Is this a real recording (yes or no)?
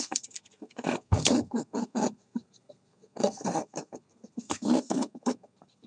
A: no